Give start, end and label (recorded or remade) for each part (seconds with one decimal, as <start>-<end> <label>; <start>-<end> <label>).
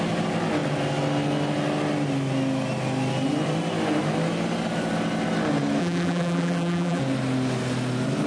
0.0-5.8 recorded; 5.8-7.0 remade; 7.0-8.3 recorded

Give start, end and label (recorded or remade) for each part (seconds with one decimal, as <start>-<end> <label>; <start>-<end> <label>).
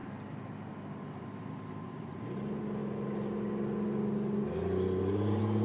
0.0-1.2 recorded; 1.2-2.8 remade; 2.8-5.0 recorded; 5.0-5.6 remade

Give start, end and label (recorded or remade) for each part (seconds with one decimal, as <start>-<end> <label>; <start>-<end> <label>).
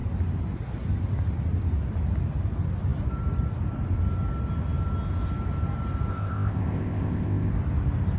0.0-6.1 recorded; 6.1-7.5 remade; 7.5-8.2 recorded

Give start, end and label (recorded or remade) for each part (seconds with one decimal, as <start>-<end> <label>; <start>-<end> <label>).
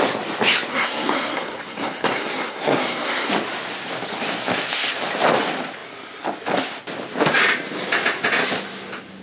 0.0-0.7 recorded; 0.7-3.3 remade; 3.3-9.2 recorded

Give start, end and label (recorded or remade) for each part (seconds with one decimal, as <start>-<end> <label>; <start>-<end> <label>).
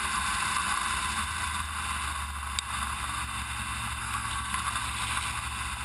0.0-4.0 recorded; 4.0-4.6 remade; 4.6-5.8 recorded